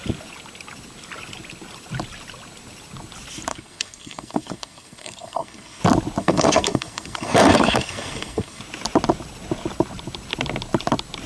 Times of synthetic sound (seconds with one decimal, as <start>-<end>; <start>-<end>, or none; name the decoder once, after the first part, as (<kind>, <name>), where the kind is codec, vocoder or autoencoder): 3.5-5.8 (codec, SNAC); 6.2-8.6